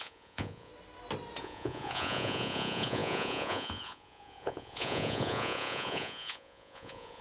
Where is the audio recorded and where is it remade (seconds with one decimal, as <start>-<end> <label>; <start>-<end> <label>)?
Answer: 0.0-0.7 remade; 0.7-1.4 recorded; 1.4-7.2 remade